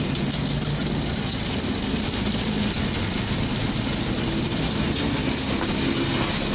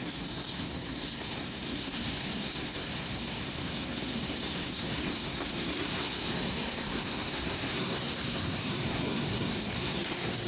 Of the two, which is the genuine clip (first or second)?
first